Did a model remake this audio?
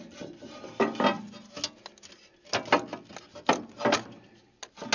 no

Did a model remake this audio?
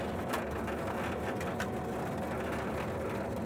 no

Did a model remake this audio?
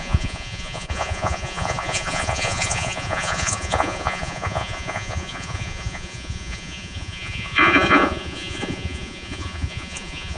yes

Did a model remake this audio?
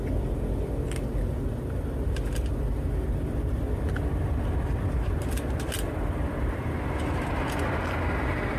no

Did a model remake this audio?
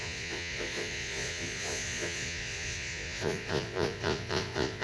yes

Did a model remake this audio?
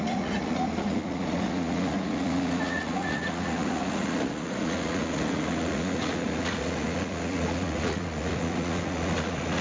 yes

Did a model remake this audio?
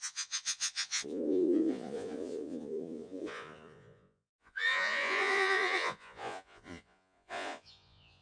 yes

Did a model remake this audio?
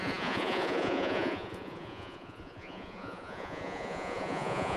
yes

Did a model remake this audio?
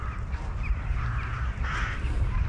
no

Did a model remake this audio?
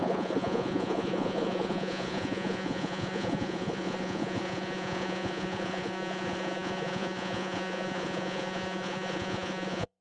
yes